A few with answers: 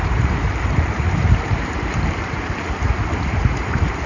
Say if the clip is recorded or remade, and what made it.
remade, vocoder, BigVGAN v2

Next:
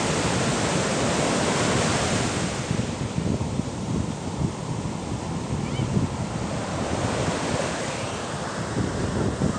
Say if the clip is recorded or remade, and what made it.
recorded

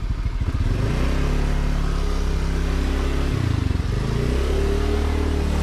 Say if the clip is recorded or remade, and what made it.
recorded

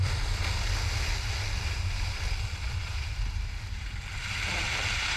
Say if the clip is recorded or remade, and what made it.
recorded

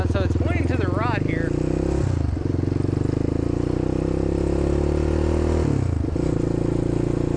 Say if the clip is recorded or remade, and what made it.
recorded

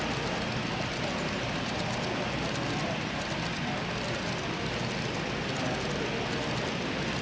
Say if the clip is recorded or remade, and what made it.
recorded